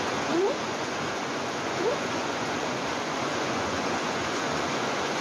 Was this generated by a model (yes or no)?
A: yes